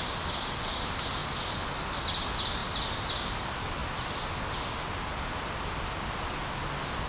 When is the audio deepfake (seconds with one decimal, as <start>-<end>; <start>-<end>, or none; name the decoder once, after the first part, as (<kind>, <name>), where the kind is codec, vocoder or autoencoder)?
none